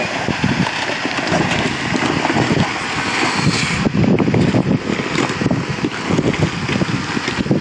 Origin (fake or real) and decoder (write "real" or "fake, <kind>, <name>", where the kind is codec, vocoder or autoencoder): real